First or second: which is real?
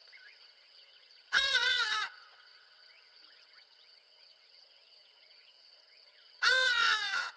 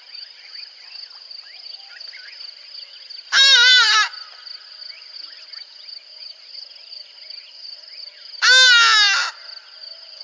second